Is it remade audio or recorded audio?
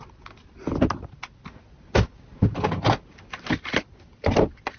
recorded